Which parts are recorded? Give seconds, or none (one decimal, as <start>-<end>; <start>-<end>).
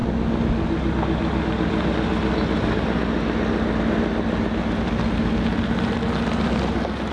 0.0-7.1